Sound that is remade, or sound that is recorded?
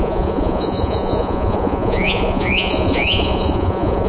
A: remade